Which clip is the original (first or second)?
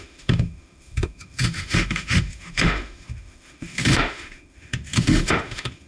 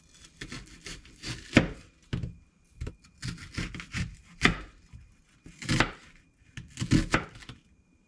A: second